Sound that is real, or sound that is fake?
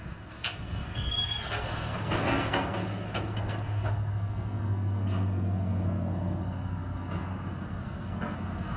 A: fake